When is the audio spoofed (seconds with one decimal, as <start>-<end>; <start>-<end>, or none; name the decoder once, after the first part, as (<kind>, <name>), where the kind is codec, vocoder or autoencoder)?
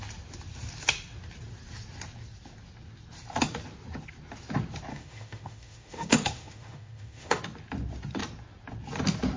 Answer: 4.9-7.4 (autoencoder, DAC-VAE)